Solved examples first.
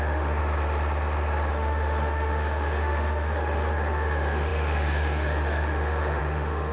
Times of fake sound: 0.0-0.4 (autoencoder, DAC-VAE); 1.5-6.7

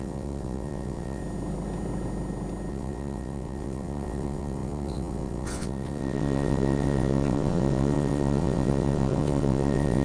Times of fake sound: 0.0-1.2 (vocoder, WaveNeXt); 2.7-10.0

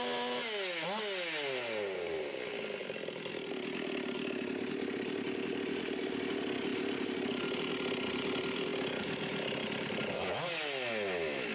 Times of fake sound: 2.8-3.5 (vocoder, BigVGAN v2); 6.7-7.7

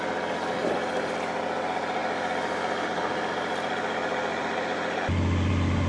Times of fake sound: none

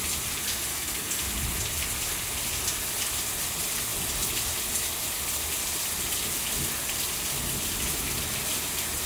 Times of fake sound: 0.7-1.3 (codec, SNAC)